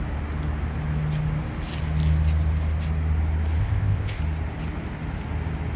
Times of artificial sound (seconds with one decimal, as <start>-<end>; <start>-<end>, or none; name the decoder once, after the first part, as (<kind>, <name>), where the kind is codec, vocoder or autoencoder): 3.6-4.2 (codec, ZipCodec)